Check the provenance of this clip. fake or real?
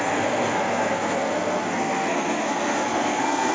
fake